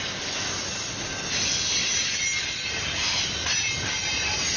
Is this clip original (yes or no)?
yes